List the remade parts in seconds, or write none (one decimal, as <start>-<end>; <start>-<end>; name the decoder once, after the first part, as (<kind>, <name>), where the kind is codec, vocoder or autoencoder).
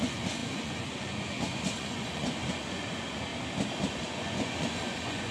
0.0-3.3 (vocoder, Vocos); 3.9-5.3